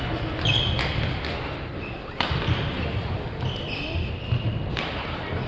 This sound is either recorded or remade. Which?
recorded